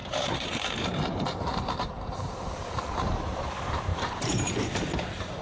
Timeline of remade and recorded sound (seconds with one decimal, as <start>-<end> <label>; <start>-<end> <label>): 0.0-2.8 remade; 2.8-3.9 recorded; 3.9-4.9 remade; 4.9-5.4 recorded